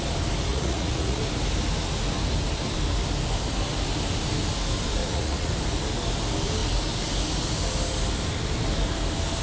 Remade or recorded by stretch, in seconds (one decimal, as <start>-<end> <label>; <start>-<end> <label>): 0.0-0.5 recorded; 0.5-1.2 remade; 1.2-5.0 recorded; 5.0-5.5 remade; 5.5-9.4 recorded